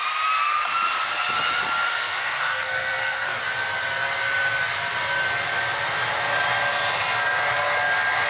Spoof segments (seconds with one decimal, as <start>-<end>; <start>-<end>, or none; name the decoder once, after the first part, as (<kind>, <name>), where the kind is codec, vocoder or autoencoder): 1.9-3.4 (codec, SNAC)